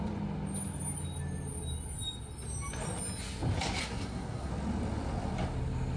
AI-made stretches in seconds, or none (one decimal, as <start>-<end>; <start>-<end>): 3.8-4.5